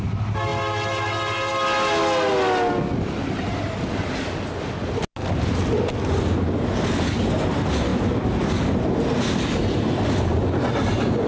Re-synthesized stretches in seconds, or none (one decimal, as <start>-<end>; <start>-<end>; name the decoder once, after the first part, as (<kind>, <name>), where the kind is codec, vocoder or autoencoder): none